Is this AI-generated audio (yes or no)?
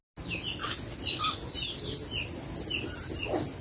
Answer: no